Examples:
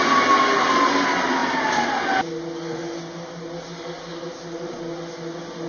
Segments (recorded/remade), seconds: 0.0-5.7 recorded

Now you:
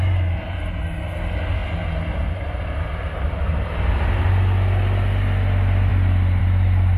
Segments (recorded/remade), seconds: 0.0-7.0 recorded

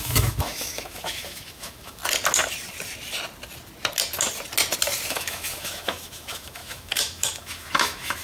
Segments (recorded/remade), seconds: 0.0-2.0 remade; 2.0-5.1 recorded; 5.1-8.2 remade